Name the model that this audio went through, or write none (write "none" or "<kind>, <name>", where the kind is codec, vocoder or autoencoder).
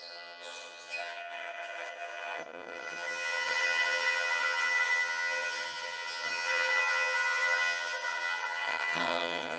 vocoder, HiFi-GAN